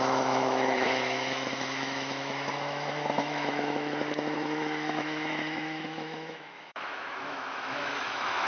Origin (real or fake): fake